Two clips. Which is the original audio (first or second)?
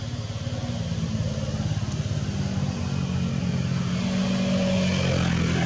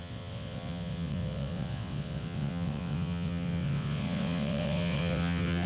first